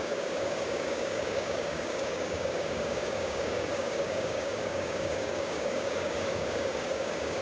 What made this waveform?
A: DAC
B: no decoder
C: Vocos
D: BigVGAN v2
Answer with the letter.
A